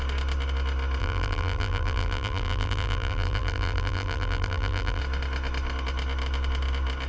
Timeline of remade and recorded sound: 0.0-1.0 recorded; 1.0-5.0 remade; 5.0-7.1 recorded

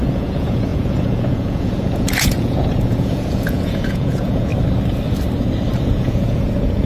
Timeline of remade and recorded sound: 0.0-4.5 remade; 4.5-5.8 recorded; 5.8-6.9 remade